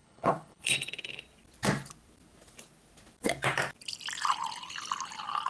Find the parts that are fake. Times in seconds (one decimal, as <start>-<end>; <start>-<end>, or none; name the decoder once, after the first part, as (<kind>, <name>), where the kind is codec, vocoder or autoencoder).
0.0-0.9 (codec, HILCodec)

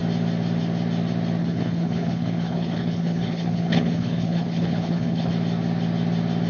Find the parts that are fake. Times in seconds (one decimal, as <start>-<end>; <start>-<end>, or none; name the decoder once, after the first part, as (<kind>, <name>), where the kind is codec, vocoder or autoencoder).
1.4-5.3 (codec, HILCodec)

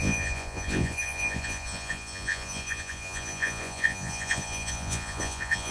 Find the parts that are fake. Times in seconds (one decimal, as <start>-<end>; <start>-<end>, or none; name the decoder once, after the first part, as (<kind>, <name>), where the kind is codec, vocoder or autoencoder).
0.0-5.7 (vocoder, Vocos)

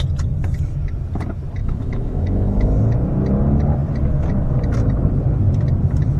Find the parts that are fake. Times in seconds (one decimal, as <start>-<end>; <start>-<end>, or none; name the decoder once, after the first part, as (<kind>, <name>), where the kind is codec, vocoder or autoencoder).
1.6-2.8 (autoencoder, DAC-VAE)

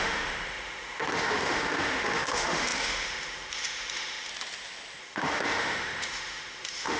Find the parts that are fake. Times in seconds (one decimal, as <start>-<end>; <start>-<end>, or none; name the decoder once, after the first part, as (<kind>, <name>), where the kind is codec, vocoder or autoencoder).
0.0-4.3 (autoencoder, DAC-VAE); 5.0-7.0